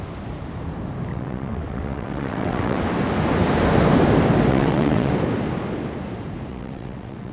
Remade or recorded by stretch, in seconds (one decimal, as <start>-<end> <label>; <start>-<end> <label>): 0.0-1.1 recorded; 1.1-2.8 remade; 2.8-4.5 recorded; 4.5-5.1 remade; 5.1-6.5 recorded; 6.5-7.3 remade